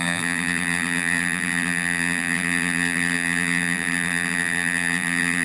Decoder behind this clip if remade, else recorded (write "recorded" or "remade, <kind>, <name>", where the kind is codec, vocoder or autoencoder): remade, vocoder, BigVGAN v2